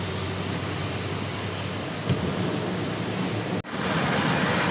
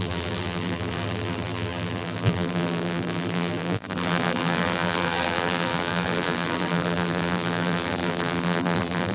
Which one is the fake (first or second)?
second